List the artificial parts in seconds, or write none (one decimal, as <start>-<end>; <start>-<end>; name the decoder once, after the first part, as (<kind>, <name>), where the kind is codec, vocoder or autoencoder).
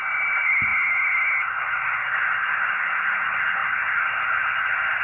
none